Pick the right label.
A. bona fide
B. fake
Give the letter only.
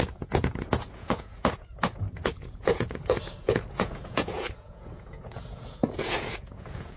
B